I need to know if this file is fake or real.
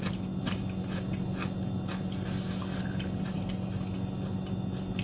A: real